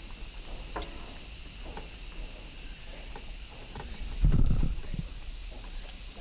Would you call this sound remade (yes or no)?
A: no